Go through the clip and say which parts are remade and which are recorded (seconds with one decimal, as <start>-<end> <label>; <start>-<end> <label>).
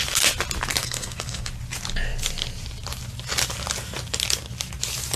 0.0-0.8 recorded; 0.8-1.5 remade; 1.5-5.2 recorded